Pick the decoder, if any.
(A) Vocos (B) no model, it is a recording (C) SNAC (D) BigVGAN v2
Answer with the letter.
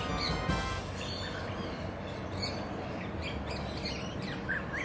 B